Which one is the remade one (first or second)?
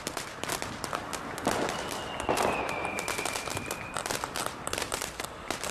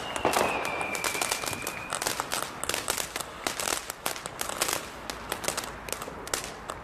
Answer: first